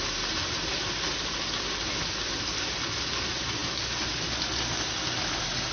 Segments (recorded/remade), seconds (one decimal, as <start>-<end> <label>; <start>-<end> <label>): 0.0-0.4 recorded; 0.4-0.9 remade; 0.9-5.7 recorded